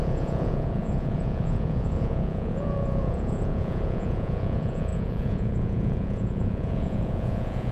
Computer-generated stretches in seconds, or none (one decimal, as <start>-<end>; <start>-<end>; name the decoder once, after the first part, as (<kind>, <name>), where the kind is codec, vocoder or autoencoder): 0.0-7.7 (vocoder, Vocos)